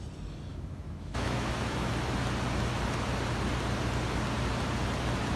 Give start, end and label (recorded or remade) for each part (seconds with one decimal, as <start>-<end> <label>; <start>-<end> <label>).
0.0-0.5 recorded; 0.5-1.9 remade; 1.9-5.4 recorded